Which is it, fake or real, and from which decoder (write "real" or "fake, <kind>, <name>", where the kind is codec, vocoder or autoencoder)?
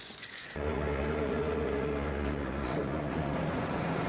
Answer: fake, vocoder, Vocos